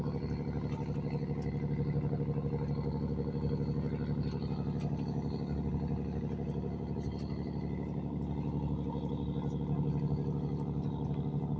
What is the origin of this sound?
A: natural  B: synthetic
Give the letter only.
A